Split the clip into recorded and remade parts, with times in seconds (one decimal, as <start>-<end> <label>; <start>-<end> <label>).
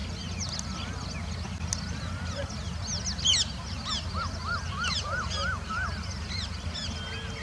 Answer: 0.0-7.4 recorded